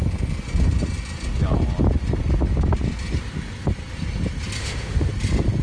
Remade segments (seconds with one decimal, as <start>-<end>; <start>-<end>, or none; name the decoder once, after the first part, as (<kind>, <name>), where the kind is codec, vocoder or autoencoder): 4.6-5.1 (autoencoder, DAC-VAE)